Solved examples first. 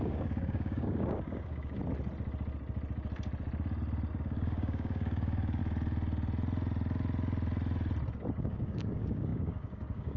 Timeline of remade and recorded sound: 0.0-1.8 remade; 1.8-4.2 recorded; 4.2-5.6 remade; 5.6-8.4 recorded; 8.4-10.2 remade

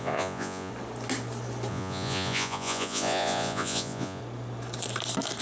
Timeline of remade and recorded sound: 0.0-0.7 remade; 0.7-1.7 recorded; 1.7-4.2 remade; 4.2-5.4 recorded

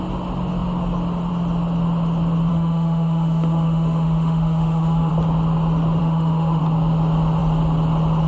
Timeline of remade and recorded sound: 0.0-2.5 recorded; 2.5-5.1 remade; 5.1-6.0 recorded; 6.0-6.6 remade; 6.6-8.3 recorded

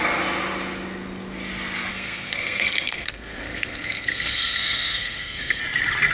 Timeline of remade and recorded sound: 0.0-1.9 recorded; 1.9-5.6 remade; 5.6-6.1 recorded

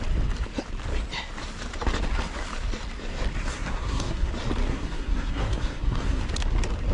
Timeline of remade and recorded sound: 0.0-3.5 recorded; 3.5-4.3 remade; 4.3-4.7 recorded; 4.7-6.2 remade; 6.2-6.9 recorded

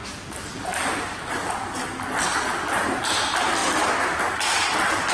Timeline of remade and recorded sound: 0.0-5.1 recorded

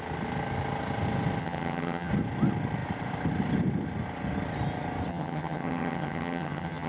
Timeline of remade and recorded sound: 0.0-1.4 recorded; 1.4-2.1 remade; 2.1-5.1 recorded; 5.1-6.9 remade

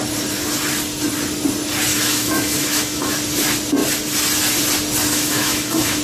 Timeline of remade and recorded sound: 0.0-1.9 recorded; 1.9-3.1 remade; 3.1-5.1 recorded; 5.1-6.0 remade